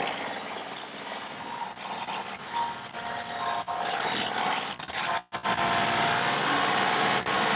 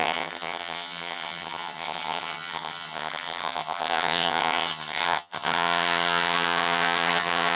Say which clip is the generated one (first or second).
second